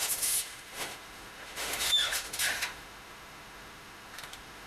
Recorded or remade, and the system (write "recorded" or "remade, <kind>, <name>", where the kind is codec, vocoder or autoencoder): remade, autoencoder, DAC-VAE